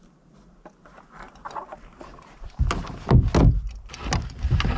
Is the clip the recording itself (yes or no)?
yes